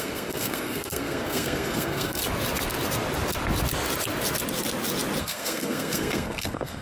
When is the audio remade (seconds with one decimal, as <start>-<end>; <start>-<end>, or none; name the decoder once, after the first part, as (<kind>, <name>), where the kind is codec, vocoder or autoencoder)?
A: 0.0-2.2 (codec, SNAC); 5.2-6.8